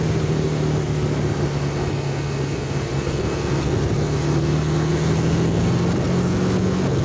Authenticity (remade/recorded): recorded